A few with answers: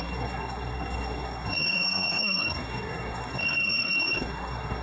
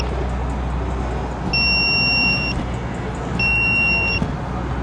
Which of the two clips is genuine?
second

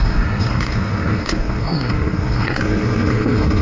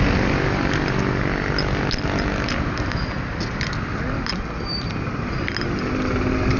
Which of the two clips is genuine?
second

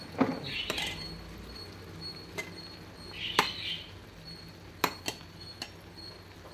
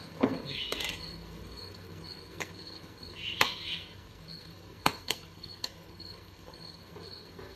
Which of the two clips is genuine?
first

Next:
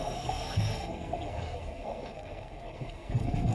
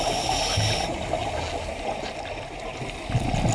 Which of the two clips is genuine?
second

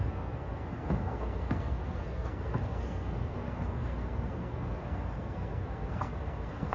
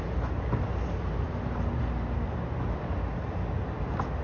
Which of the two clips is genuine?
second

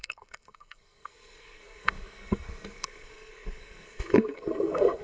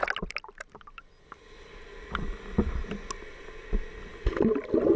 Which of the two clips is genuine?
second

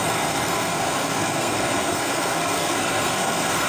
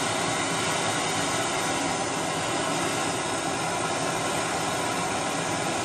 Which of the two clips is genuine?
second